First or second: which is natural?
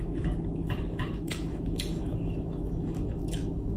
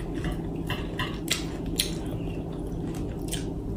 second